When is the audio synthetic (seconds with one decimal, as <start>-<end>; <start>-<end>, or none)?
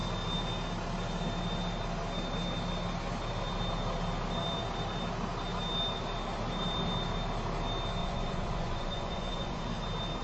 8.0-9.6